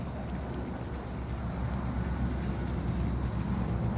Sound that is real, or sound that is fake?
real